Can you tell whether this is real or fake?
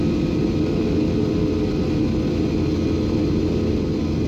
real